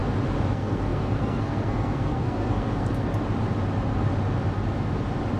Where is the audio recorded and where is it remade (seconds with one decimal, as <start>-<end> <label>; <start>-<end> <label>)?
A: 0.0-0.5 recorded; 0.5-3.1 remade; 3.1-5.4 recorded